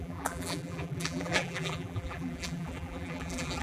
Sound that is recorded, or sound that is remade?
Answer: remade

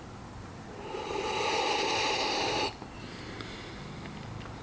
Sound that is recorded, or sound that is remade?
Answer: recorded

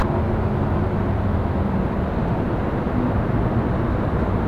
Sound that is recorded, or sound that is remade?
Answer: recorded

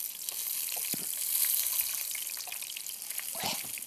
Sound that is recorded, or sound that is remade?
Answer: recorded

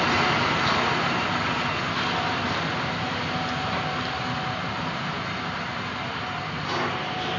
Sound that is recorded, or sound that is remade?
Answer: recorded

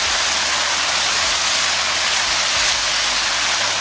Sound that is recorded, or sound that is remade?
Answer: recorded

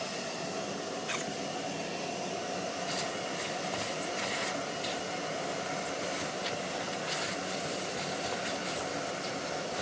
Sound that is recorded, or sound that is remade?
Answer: recorded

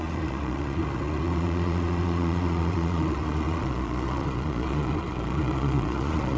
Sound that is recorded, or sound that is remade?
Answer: remade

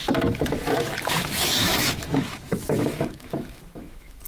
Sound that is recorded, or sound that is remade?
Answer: remade